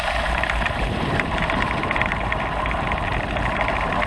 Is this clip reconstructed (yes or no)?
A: yes